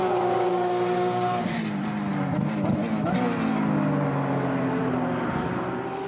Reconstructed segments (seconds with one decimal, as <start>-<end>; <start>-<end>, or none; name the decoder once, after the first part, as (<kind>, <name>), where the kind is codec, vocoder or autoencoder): 0.0-1.6 (codec, DAC)